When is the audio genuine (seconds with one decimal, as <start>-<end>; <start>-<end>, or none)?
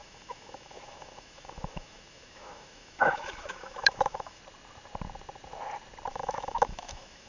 4.4-6.1